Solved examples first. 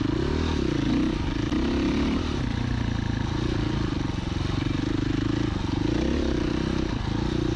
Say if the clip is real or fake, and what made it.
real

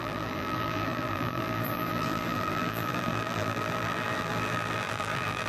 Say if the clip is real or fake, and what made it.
fake, vocoder, BigVGAN v2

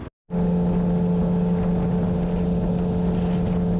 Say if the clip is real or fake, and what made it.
real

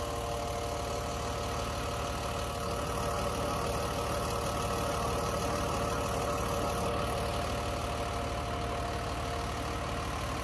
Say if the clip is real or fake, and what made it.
real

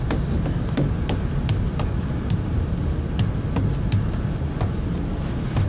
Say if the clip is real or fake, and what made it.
real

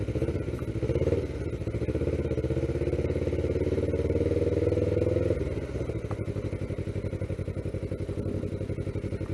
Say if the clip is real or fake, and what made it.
real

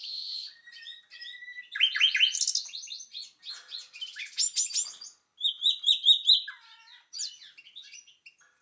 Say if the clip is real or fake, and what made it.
real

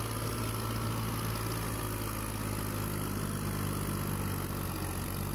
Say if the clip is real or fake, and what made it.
real